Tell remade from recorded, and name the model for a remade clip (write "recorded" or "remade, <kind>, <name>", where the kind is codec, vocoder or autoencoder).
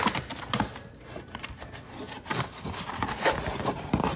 recorded